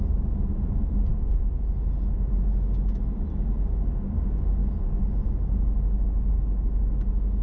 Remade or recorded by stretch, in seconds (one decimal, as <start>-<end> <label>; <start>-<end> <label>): 0.0-7.4 recorded

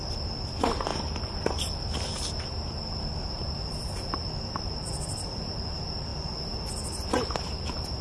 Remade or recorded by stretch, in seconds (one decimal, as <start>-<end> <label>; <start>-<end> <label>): 0.0-8.0 recorded

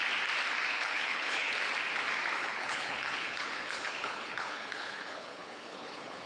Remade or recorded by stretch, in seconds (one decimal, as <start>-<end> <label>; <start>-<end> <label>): 0.0-0.7 recorded; 0.7-1.5 remade; 1.5-2.4 recorded; 2.4-6.3 remade

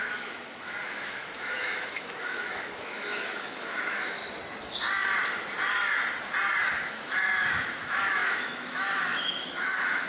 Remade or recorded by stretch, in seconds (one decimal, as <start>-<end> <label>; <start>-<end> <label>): 0.0-4.2 remade; 4.2-6.9 recorded; 6.9-10.1 remade

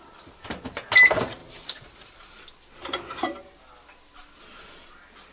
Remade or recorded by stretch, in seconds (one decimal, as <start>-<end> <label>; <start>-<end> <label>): 0.0-1.4 recorded; 1.4-2.4 remade; 2.4-5.3 recorded